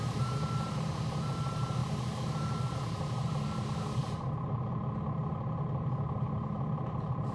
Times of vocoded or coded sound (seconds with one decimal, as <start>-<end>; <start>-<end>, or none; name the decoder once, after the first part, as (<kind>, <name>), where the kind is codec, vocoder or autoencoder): 1.8-2.6 (vocoder, BigVGAN v2)

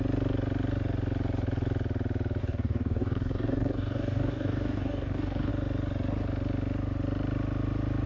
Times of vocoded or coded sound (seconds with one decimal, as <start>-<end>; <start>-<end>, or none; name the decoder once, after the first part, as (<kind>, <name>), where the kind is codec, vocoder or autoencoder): 2.4-5.5 (codec, DAC)